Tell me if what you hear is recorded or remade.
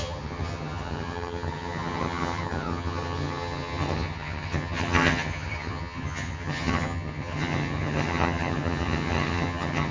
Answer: remade